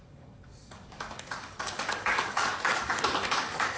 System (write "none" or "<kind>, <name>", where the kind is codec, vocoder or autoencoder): codec, DAC